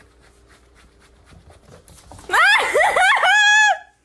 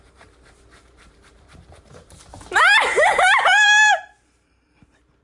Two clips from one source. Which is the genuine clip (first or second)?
first